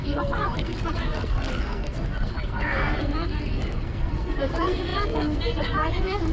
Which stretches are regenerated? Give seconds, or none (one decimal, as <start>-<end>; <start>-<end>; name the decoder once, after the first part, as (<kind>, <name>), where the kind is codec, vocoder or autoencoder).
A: 0.0-6.3 (codec, SNAC)